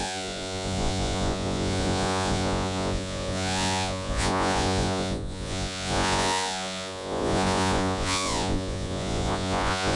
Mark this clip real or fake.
fake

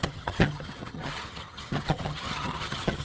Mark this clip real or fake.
fake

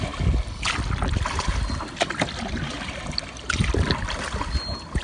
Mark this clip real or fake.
real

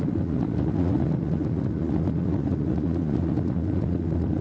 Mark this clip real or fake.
fake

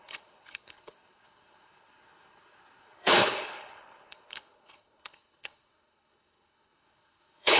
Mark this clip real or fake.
fake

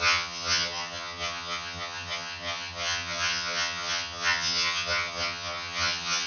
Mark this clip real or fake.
fake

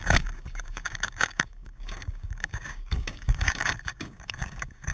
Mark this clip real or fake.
fake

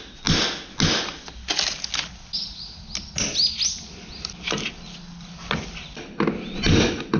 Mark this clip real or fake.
real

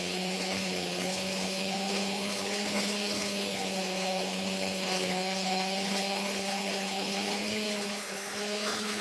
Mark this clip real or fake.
fake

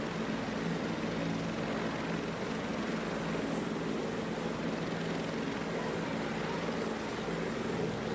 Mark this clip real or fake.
real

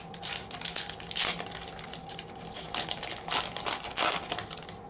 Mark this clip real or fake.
real